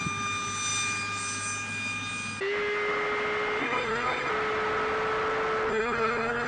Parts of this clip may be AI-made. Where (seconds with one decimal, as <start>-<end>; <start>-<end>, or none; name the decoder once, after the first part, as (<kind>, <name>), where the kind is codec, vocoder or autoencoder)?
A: 3.6-4.3 (codec, SNAC); 5.7-6.5